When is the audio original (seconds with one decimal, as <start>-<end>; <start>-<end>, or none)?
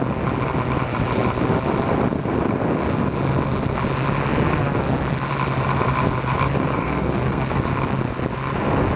0.0-6.8; 7.6-9.0